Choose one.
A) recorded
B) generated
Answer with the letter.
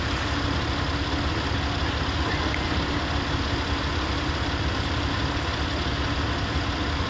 A